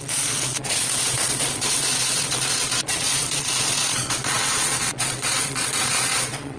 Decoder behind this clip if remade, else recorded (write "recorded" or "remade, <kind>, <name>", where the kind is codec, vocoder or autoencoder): remade, vocoder, Vocos